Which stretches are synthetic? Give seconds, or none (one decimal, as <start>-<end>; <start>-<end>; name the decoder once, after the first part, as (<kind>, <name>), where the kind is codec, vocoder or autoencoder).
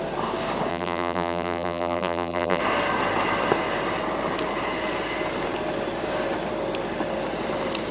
0.7-2.6 (vocoder, BigVGAN v2)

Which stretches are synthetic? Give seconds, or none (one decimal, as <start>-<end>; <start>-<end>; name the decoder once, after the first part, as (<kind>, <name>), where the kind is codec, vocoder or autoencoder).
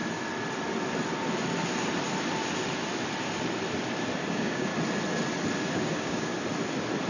4.3-4.7 (codec, DAC); 5.7-6.3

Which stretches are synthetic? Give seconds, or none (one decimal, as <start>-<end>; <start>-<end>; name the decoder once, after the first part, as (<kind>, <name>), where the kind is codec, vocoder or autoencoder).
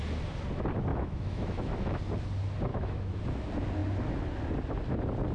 0.9-2.0 (autoencoder, DAC-VAE); 2.7-3.2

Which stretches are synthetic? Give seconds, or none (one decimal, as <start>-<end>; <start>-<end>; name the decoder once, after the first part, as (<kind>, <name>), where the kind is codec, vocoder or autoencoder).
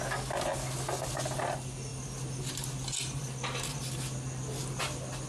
none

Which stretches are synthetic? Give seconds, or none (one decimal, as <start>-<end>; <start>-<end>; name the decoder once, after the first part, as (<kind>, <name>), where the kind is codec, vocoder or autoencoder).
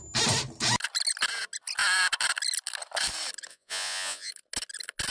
3.5-4.3 (vocoder, Vocos)